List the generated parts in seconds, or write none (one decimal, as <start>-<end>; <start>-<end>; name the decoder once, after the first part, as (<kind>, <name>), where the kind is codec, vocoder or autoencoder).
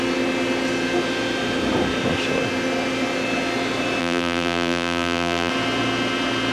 4.0-5.5 (vocoder, BigVGAN v2)